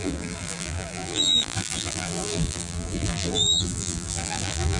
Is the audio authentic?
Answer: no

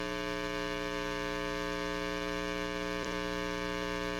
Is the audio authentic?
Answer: no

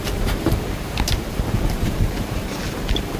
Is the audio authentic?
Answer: no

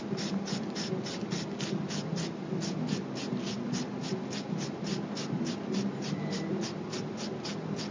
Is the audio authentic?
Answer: yes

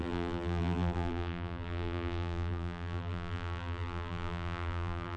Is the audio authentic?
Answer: no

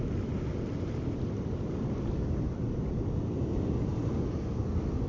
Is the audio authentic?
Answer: yes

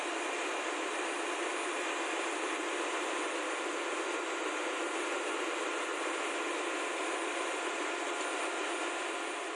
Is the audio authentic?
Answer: yes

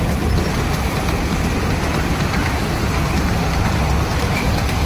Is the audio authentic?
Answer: yes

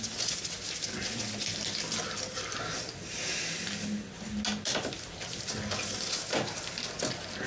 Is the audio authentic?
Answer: yes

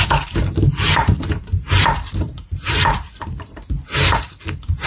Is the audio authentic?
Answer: no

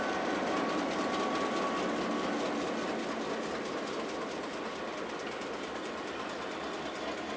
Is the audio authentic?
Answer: yes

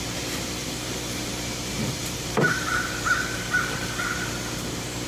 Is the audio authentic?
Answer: no